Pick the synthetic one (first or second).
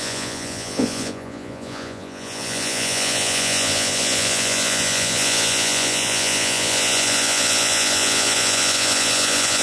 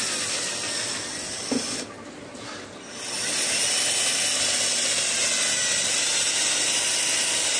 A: first